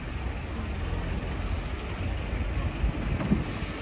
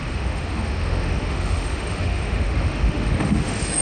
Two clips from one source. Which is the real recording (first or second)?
first